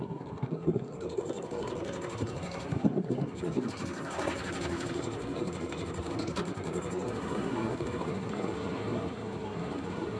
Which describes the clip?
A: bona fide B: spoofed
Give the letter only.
B